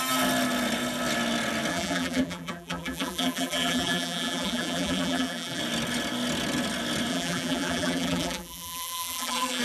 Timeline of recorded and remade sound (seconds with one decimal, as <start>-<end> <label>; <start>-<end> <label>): 0.0-1.7 recorded; 1.7-5.6 remade; 5.6-7.1 recorded; 7.1-9.6 remade